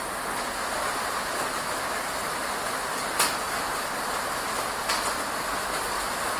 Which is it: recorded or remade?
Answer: recorded